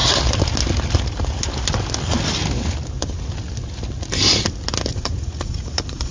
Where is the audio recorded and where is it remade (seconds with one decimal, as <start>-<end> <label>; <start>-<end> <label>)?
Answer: 0.0-4.9 recorded; 4.9-6.1 remade